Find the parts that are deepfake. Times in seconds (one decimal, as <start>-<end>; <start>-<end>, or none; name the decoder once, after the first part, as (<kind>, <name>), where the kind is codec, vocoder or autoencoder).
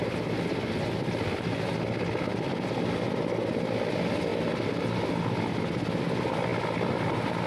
2.3-2.8 (vocoder, BigVGAN v2)